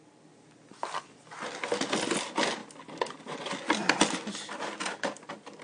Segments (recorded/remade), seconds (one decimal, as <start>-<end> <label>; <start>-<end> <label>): 0.0-5.6 recorded